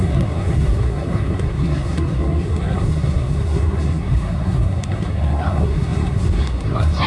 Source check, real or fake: fake